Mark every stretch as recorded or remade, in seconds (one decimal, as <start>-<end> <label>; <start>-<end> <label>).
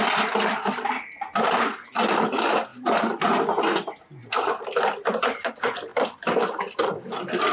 0.0-7.5 recorded